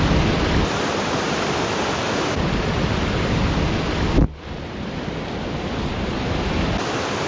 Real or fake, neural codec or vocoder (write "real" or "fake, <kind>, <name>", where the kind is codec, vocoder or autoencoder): real